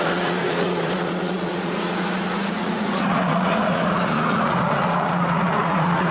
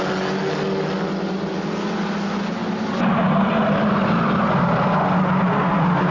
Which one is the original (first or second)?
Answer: second